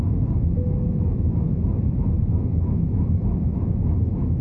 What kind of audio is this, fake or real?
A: fake